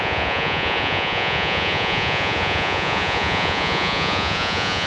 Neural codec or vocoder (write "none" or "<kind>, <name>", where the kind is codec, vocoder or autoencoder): vocoder, Vocos